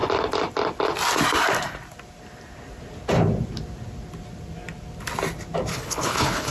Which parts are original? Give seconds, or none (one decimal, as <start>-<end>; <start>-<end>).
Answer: 0.0-5.7